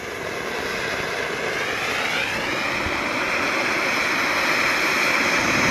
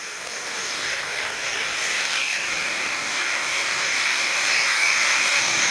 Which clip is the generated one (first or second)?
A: second